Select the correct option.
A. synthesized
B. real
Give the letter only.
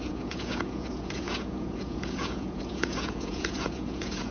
A